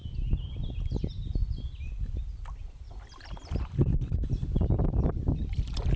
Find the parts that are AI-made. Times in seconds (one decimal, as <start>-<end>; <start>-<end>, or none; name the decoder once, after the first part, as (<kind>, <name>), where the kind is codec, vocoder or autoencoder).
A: none